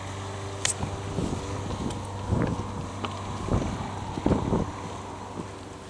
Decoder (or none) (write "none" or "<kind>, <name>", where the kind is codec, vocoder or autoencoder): none